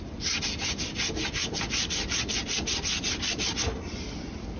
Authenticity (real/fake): real